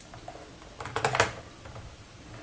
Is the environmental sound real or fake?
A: real